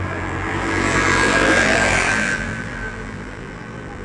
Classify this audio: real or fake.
fake